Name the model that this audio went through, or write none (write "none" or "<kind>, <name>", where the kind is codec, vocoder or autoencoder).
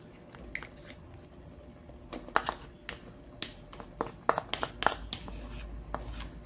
none